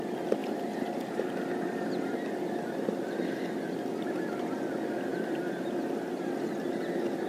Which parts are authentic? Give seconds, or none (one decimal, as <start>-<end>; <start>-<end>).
0.0-0.4; 1.3-7.3